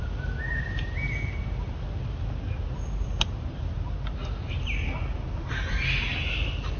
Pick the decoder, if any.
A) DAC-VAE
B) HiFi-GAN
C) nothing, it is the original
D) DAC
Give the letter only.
C